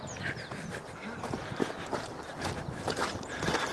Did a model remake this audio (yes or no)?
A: no